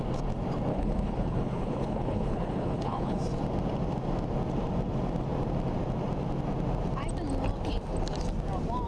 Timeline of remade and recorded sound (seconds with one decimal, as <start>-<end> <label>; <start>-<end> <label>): 0.0-0.7 recorded; 0.7-3.2 remade; 3.2-8.9 recorded